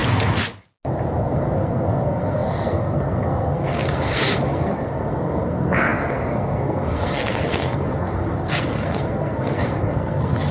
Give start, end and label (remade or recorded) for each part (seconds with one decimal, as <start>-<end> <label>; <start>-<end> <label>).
0.0-1.2 recorded; 1.2-10.5 remade